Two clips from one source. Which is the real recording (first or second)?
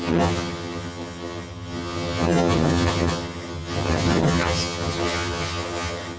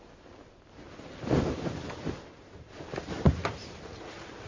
second